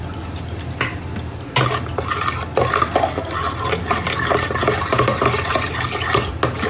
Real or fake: real